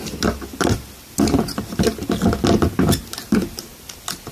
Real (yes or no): yes